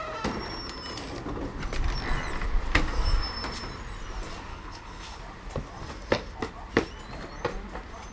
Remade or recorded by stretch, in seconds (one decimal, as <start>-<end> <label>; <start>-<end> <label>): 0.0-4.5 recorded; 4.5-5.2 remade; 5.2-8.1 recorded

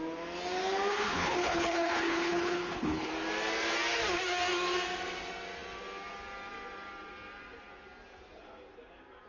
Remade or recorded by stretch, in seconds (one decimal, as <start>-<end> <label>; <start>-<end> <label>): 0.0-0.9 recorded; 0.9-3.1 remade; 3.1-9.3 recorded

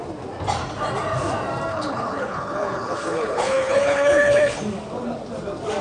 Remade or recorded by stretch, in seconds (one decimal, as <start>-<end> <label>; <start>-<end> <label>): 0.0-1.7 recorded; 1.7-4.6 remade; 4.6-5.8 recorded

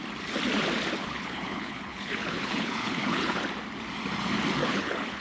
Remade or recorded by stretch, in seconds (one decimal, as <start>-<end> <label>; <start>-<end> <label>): 0.0-1.0 recorded; 1.0-3.4 remade; 3.4-4.6 recorded; 4.6-5.2 remade